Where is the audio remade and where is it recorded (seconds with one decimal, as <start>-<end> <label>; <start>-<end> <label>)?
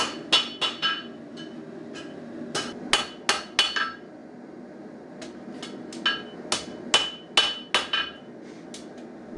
0.0-9.4 recorded